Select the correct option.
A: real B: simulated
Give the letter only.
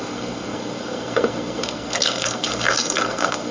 B